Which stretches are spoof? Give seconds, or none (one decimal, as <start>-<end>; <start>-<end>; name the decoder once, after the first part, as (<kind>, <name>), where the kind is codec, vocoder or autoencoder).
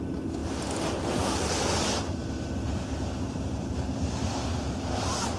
none